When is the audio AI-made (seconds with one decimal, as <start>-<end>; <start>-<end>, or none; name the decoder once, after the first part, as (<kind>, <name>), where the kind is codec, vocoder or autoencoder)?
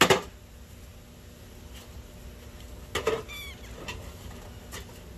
none